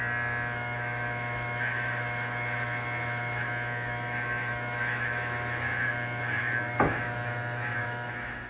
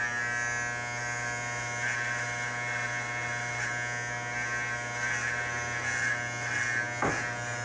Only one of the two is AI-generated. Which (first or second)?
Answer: first